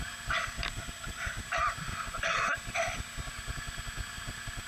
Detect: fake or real real